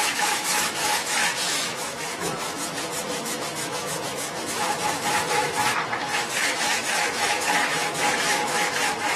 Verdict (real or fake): fake